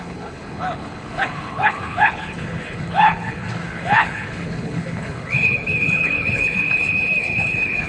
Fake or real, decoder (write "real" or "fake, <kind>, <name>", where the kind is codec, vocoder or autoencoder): fake, codec, HILCodec